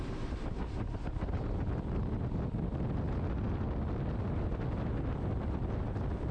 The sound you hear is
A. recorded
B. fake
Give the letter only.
A